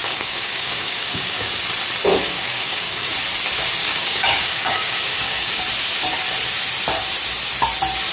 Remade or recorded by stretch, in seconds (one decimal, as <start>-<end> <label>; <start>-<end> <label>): 0.0-1.5 remade; 1.5-2.1 recorded; 2.1-3.1 remade; 3.1-3.8 recorded; 3.8-5.6 remade; 5.6-8.1 recorded